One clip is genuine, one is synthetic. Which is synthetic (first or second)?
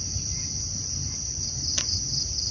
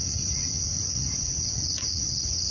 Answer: second